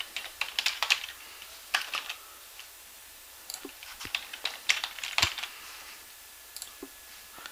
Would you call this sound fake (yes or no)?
yes